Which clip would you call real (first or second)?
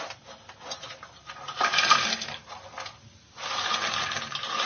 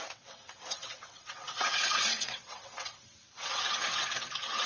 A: first